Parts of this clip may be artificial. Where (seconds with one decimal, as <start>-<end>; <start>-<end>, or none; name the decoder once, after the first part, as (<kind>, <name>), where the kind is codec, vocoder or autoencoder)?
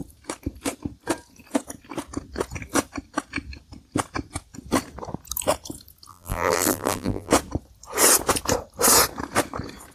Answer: 6.1-7.3 (vocoder, BigVGAN v2)